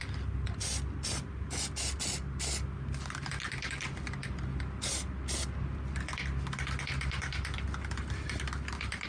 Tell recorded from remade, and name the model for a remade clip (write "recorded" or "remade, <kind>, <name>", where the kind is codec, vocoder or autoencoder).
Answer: recorded